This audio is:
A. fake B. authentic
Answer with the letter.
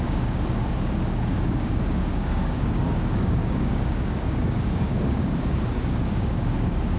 A